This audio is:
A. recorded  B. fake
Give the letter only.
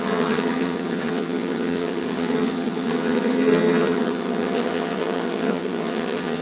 B